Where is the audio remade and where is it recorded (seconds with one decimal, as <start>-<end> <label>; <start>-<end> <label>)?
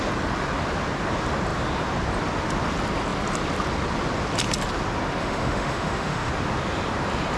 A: 0.0-5.2 recorded; 5.2-6.3 remade; 6.3-7.4 recorded